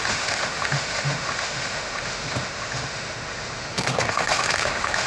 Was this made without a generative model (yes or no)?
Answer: no